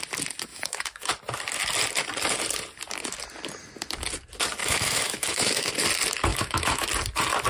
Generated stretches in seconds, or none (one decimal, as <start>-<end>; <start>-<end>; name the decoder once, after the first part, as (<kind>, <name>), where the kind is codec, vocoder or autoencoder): 0.5-1.1 (autoencoder, DAC-VAE); 4.6-5.7; 6.3-6.9